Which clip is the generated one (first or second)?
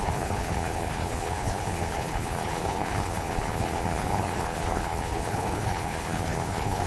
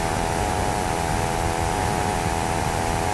first